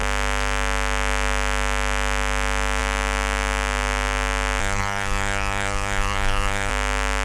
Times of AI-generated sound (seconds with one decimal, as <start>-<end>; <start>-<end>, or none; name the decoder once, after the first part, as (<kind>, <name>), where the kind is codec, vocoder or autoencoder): 4.6-6.7 (codec, SNAC)